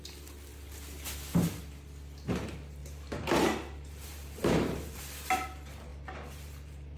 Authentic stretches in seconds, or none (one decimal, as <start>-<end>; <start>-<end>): 0.0-2.8; 5.0-5.9